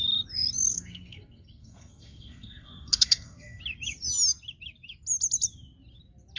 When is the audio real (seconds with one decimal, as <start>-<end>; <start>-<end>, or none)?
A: 0.0-0.7; 3.6-6.4